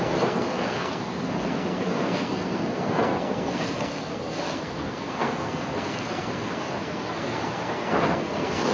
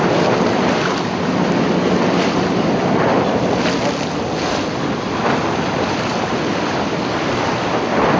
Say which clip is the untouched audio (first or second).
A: second